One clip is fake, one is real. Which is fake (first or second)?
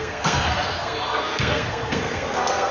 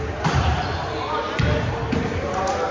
first